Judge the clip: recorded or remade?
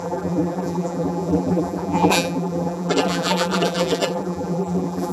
remade